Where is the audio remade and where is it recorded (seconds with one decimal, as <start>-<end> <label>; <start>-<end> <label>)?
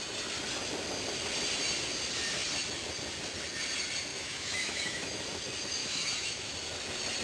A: 0.0-4.1 recorded; 4.1-5.2 remade; 5.2-5.8 recorded; 5.8-6.5 remade; 6.5-7.2 recorded